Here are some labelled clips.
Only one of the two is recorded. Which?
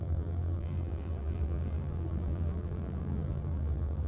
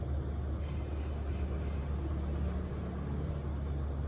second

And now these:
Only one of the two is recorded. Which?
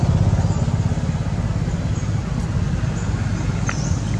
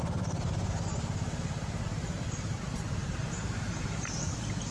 first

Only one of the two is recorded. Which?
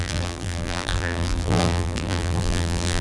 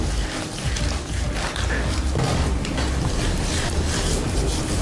second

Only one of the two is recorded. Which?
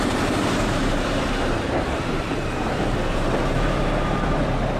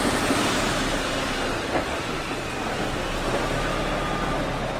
second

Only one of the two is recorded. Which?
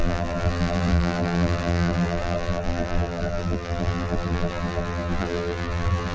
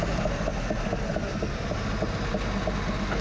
second